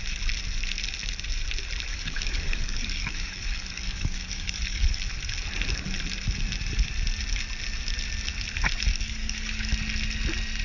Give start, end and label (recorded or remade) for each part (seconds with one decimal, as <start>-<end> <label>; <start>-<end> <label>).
0.0-1.9 recorded; 1.9-5.0 remade; 5.0-8.9 recorded; 8.9-9.7 remade; 9.7-10.6 recorded